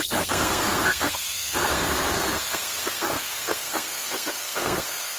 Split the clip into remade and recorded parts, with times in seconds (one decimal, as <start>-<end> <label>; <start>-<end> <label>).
0.0-5.2 remade